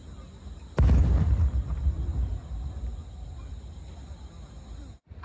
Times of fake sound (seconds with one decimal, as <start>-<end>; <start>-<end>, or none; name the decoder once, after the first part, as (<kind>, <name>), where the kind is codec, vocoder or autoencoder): none